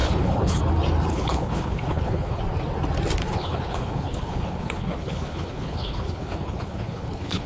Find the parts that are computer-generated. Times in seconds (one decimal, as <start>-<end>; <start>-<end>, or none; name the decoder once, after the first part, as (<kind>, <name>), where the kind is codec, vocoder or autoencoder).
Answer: 0.0-0.6 (codec, HILCodec); 1.1-2.4; 3.2-7.5